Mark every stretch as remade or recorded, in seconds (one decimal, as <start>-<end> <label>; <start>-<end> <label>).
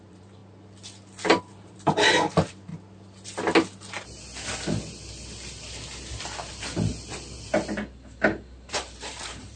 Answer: 0.0-0.4 remade; 0.4-1.4 recorded; 1.4-2.7 remade; 2.7-6.5 recorded; 6.5-6.9 remade; 6.9-8.7 recorded; 8.7-9.6 remade